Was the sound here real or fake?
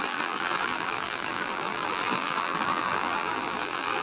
fake